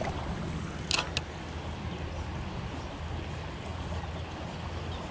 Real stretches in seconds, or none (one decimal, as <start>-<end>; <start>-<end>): 0.0-5.1